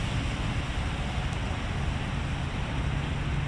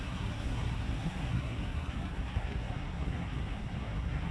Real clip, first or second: first